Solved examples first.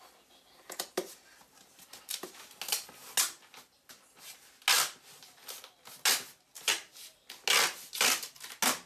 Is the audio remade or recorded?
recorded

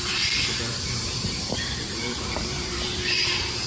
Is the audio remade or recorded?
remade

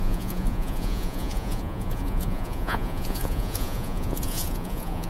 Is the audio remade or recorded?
remade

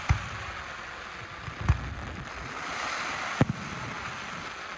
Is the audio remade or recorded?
recorded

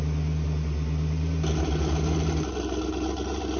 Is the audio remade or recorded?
recorded